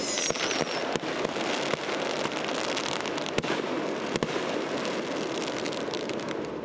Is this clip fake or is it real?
real